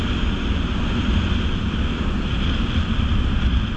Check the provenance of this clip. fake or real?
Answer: real